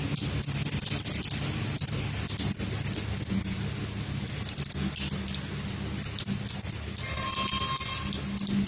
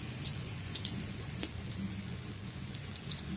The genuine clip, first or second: first